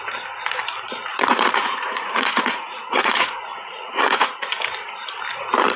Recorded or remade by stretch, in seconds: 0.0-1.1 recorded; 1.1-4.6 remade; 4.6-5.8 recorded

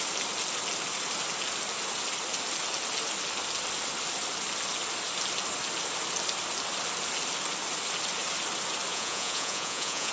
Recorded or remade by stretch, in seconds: 0.0-8.9 recorded; 8.9-10.1 remade

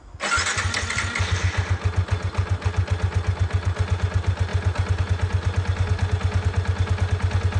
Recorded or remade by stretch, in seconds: 0.0-7.6 recorded

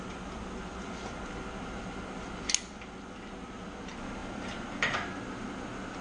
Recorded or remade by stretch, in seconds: 0.0-6.0 recorded

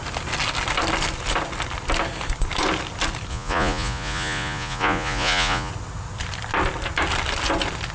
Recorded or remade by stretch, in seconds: 0.0-3.3 recorded; 3.3-5.7 remade; 5.7-7.9 recorded

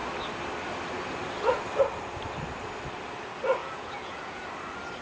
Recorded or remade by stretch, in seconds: 0.0-3.6 recorded; 3.6-4.4 remade; 4.4-5.0 recorded